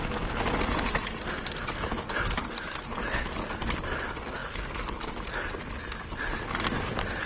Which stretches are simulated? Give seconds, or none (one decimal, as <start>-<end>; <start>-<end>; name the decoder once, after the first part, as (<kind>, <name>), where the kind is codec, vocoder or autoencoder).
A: none

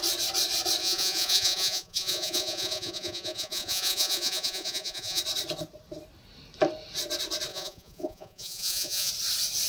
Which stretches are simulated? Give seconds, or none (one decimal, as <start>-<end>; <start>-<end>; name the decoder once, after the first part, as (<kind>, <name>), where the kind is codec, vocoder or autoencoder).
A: 0.8-5.2 (vocoder, Vocos); 7.5-9.1

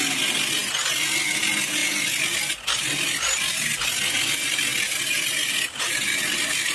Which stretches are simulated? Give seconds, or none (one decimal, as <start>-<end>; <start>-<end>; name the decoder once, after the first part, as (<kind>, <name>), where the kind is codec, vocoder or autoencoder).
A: none

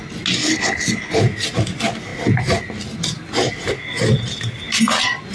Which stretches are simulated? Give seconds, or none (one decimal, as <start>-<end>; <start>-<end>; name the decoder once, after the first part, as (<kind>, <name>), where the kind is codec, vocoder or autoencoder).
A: 0.4-1.2 (codec, HILCodec)

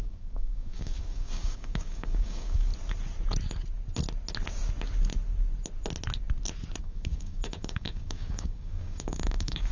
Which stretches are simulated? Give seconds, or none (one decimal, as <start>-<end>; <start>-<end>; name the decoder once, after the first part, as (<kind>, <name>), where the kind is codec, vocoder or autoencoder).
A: 0.0-2.7 (codec, DAC); 6.8-9.7

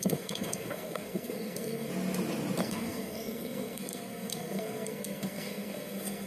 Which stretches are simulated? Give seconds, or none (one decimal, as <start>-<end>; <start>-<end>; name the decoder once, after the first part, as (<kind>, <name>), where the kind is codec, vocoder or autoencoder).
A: 0.0-1.9 (codec, SNAC); 2.6-6.3